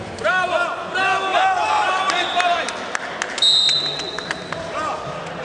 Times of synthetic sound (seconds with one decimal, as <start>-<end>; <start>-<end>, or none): none

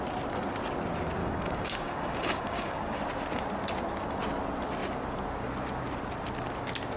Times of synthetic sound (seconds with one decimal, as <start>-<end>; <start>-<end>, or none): 1.2-3.0

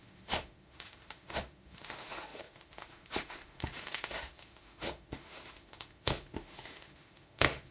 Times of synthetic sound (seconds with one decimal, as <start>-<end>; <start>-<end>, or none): 0.0-7.7